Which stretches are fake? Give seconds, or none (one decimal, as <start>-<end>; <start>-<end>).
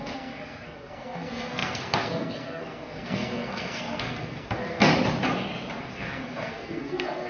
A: 0.0-4.9; 5.8-7.3